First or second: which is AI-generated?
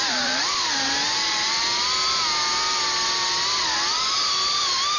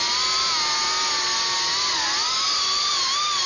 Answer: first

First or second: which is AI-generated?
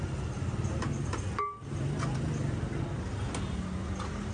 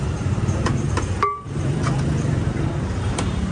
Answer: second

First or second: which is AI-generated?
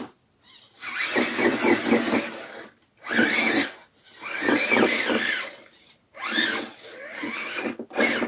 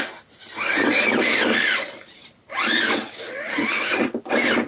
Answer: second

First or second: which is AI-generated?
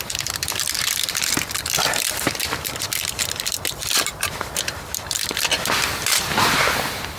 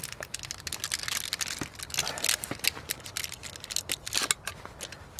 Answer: first